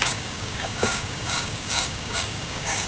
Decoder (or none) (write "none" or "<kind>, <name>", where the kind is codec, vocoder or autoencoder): codec, DAC